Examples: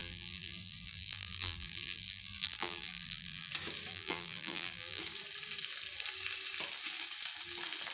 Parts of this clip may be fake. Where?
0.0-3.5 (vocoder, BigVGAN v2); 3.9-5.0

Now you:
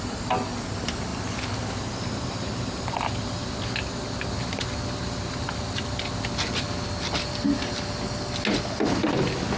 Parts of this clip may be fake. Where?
none